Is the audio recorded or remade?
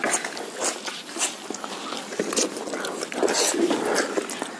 recorded